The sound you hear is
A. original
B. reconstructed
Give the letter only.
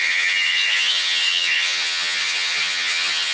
B